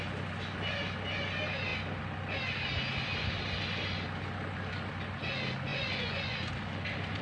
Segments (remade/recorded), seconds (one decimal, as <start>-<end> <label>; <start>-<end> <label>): 0.0-5.7 recorded; 5.7-6.5 remade; 6.5-7.2 recorded